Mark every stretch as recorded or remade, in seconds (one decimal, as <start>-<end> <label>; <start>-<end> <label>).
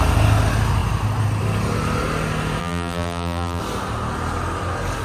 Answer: 0.0-2.6 recorded; 2.6-3.6 remade; 3.6-5.0 recorded